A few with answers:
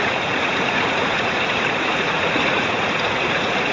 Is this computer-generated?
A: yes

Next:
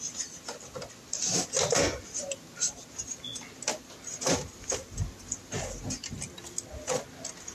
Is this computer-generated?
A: no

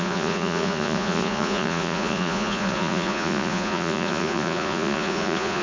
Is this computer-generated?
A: yes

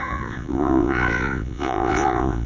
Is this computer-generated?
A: yes